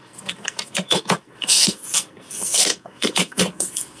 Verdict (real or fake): fake